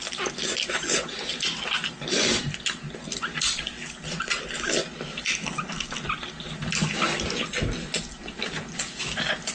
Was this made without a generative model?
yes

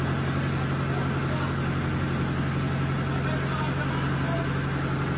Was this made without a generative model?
yes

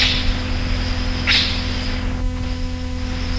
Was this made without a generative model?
yes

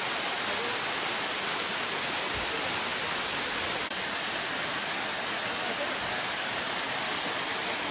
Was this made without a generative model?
yes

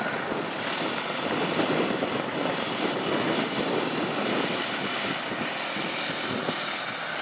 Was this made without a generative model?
yes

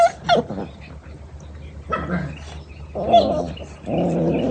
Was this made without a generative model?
yes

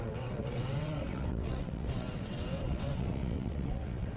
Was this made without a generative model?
no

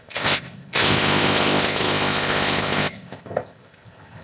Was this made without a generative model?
no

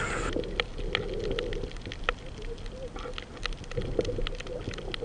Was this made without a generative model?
yes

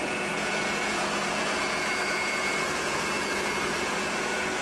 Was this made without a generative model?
no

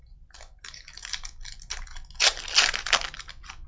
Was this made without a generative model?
yes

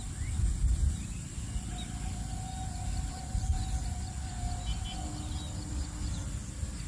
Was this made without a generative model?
yes